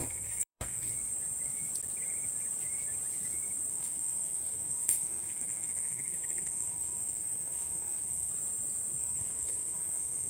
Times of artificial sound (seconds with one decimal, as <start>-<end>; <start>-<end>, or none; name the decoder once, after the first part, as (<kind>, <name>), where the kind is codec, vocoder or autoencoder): 0.0-0.9 (codec, SNAC); 3.7-8.3; 9.0-10.3